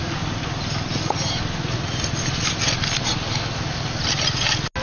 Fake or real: real